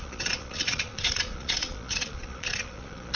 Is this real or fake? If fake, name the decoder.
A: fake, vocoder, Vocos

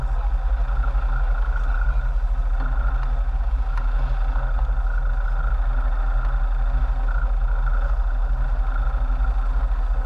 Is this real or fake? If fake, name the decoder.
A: real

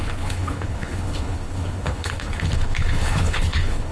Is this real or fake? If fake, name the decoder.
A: fake, codec, HILCodec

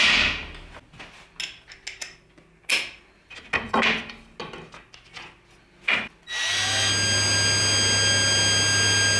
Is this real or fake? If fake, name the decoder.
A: real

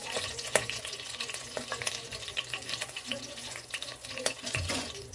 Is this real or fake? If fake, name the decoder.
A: fake, vocoder, Vocos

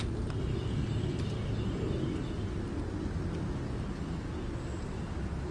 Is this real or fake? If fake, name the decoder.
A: real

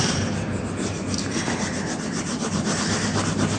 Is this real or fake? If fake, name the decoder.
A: real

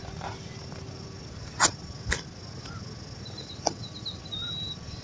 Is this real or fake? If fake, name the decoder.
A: real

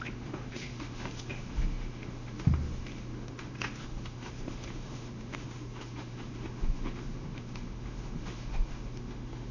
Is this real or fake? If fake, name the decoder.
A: fake, autoencoder, DAC-VAE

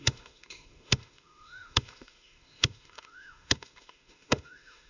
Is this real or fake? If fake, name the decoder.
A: fake, autoencoder, DAC-VAE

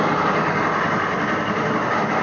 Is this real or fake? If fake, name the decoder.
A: real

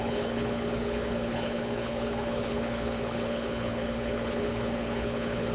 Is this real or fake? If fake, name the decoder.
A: fake, codec, HILCodec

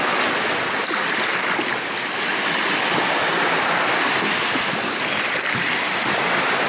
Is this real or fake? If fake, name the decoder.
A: real